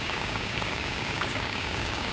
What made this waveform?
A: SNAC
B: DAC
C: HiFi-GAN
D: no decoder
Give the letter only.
B